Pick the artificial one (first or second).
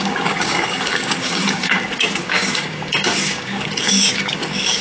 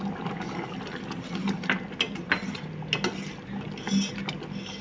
first